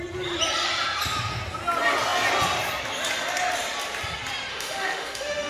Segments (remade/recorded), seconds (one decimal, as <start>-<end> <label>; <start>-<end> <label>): 0.0-4.5 recorded; 4.5-5.5 remade